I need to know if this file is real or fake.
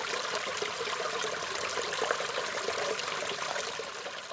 real